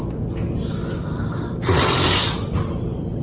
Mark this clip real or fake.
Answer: real